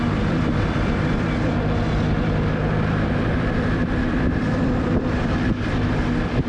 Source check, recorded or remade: remade